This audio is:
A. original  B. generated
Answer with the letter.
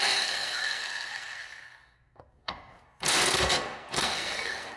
B